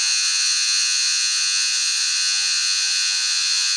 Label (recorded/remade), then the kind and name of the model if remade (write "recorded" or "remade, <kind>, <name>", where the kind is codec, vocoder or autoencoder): remade, vocoder, Vocos